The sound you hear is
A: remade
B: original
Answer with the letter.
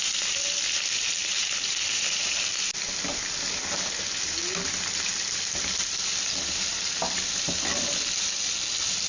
B